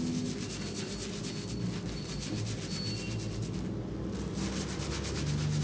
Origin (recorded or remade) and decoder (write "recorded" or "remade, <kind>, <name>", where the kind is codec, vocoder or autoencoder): recorded